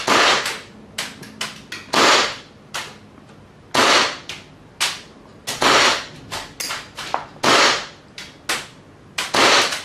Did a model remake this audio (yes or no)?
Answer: no